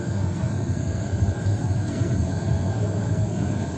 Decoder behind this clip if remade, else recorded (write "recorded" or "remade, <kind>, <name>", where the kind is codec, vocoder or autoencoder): remade, codec, SNAC